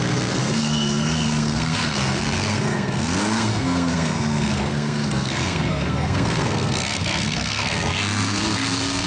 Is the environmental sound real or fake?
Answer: fake